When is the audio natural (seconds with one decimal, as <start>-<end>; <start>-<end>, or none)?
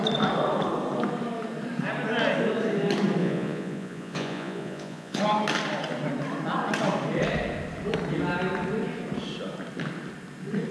0.0-3.2; 5.2-10.7